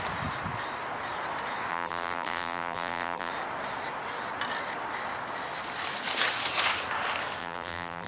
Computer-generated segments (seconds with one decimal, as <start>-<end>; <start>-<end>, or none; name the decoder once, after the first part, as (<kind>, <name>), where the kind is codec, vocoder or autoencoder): 1.7-3.3 (vocoder, BigVGAN v2); 7.4-8.1

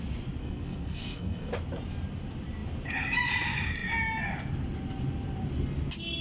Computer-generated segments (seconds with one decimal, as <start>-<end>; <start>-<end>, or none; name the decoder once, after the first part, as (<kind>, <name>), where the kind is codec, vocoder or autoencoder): 0.4-1.5 (codec, SNAC)

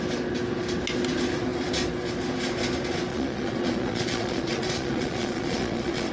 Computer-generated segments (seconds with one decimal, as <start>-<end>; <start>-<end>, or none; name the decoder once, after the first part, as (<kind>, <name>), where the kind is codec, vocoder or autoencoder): 3.1-6.1 (vocoder, Vocos)

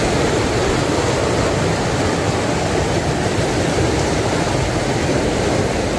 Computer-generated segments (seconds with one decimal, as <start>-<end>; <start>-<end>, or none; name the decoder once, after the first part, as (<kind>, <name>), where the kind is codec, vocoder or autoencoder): none